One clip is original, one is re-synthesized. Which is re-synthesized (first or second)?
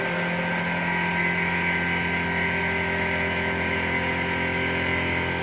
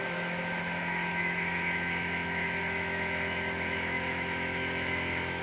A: second